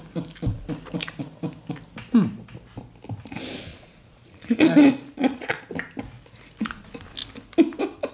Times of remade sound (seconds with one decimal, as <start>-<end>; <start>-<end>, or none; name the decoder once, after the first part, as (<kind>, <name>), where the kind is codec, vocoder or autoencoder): 3.7-5.6 (vocoder, Vocos)